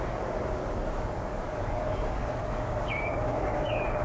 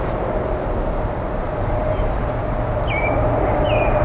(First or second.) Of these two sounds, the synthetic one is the first